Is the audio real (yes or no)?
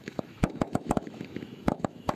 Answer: no